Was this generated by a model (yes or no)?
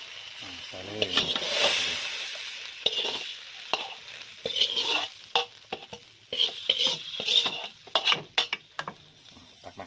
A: no